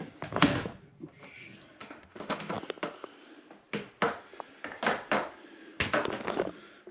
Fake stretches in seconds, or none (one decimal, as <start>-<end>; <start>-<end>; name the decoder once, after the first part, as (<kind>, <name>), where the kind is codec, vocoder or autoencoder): 1.8-2.5 (autoencoder, DAC-VAE)